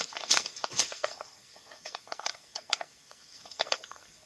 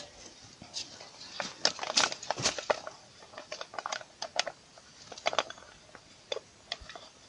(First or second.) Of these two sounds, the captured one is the second